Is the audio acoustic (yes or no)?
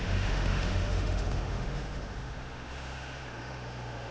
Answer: no